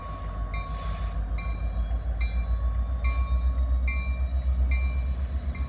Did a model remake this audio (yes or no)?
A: no